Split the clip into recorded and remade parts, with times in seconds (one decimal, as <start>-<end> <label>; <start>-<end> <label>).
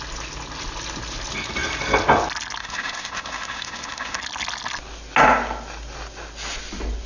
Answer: 0.0-2.6 recorded; 2.6-4.2 remade; 4.2-7.1 recorded